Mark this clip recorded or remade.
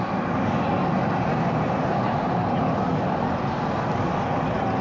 recorded